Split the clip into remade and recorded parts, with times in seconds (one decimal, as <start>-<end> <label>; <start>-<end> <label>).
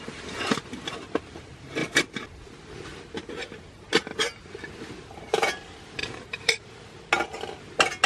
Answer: 0.0-6.0 recorded; 6.0-6.6 remade; 6.6-8.1 recorded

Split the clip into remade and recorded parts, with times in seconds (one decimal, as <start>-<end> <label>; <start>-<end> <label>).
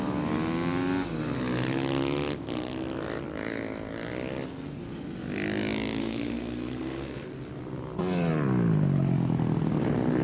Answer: 0.0-6.0 recorded; 6.0-7.3 remade; 7.3-10.2 recorded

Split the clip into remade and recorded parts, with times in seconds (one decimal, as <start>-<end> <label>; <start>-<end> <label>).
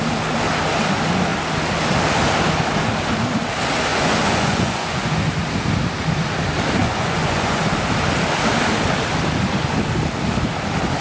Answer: 0.0-3.9 recorded; 3.9-5.1 remade; 5.1-6.8 recorded; 6.8-7.6 remade; 7.6-11.0 recorded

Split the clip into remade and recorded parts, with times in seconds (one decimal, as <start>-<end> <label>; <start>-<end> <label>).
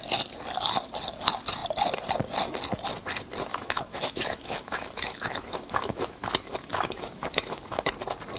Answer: 0.0-3.5 recorded; 3.5-7.9 remade; 7.9-8.4 recorded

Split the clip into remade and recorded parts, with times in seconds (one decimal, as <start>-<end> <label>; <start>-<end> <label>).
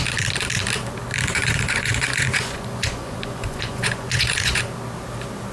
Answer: 0.0-1.3 recorded; 1.3-4.6 remade; 4.6-5.5 recorded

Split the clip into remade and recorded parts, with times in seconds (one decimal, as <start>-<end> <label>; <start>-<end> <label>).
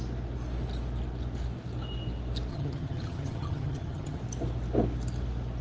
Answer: 0.0-2.5 recorded; 2.5-4.2 remade; 4.2-5.6 recorded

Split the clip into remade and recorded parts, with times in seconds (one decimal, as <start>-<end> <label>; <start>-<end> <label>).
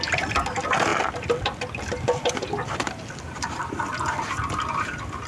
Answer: 0.0-5.3 recorded